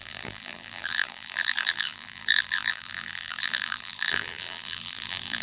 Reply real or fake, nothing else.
fake